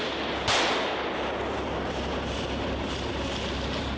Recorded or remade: recorded